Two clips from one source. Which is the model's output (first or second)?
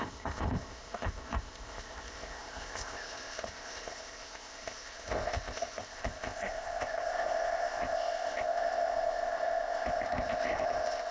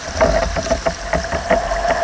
first